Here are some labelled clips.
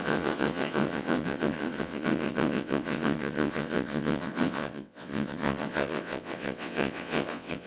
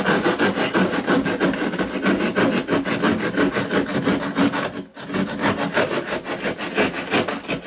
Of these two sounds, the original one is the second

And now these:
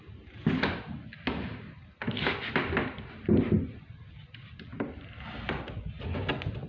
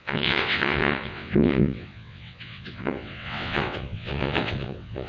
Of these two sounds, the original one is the first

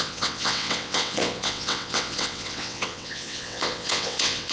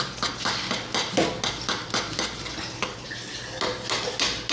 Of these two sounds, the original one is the second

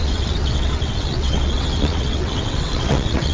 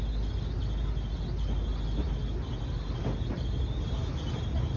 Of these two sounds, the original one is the second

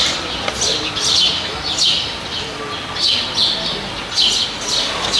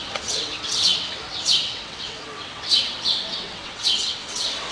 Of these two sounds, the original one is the first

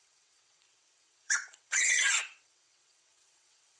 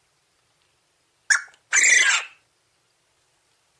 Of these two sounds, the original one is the second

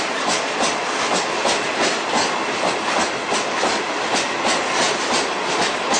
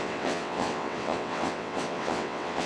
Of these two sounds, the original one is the first